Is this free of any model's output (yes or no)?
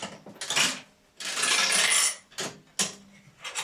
yes